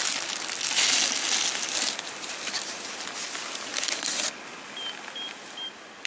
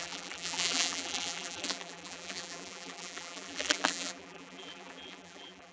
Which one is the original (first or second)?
first